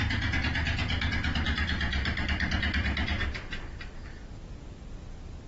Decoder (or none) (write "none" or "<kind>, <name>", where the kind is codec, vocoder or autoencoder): none